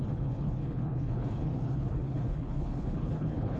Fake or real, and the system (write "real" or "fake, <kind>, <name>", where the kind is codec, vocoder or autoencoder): fake, codec, HILCodec